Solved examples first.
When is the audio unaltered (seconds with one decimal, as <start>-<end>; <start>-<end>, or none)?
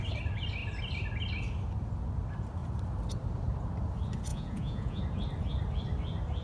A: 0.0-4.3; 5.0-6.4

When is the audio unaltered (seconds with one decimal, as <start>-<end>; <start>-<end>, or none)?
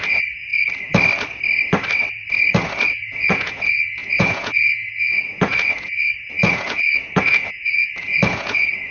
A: 0.5-2.9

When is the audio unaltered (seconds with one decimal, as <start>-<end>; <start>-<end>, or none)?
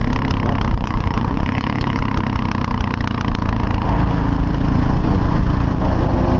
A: 0.0-0.7; 2.0-4.6